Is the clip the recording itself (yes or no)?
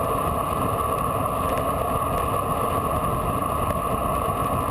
yes